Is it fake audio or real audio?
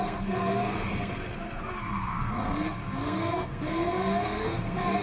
fake